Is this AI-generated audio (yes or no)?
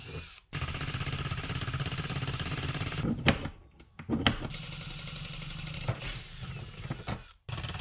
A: no